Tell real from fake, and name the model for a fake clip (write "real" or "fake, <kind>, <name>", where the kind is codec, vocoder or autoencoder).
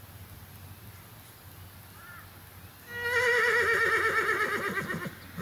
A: real